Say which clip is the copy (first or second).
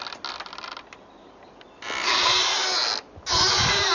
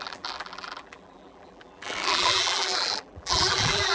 second